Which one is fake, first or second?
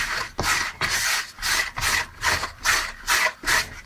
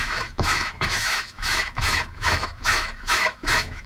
second